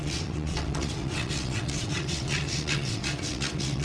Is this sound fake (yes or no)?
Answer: yes